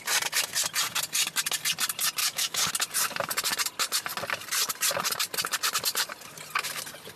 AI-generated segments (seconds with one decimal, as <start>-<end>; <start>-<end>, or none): 2.2-2.7

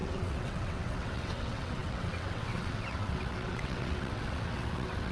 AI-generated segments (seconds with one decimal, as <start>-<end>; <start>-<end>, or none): 0.0-5.1

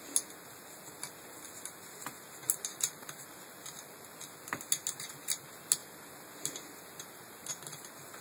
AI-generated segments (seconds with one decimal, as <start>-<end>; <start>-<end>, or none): none

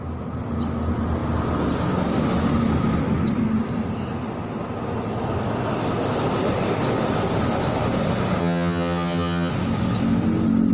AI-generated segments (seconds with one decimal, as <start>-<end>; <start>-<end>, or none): 8.4-9.5

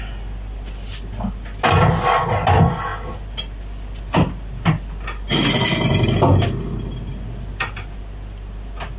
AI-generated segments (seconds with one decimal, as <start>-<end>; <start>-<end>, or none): none

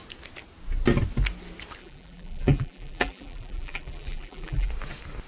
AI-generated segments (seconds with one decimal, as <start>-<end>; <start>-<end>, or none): 1.8-4.7

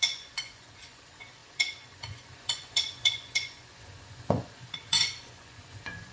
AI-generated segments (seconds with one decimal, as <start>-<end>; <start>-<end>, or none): 0.0-6.1

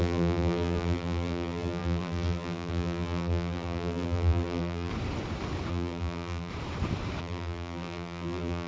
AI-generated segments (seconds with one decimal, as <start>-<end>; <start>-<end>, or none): 0.0-4.9; 5.7-6.5; 7.2-8.7